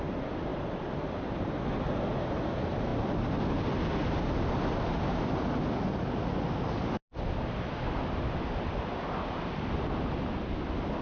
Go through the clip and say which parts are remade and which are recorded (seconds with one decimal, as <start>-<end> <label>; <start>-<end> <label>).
0.0-11.0 recorded